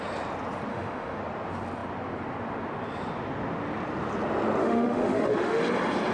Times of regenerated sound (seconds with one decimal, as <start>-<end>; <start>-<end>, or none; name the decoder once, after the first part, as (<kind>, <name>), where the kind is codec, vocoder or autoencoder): 0.7-1.2 (autoencoder, DAC-VAE); 4.6-5.6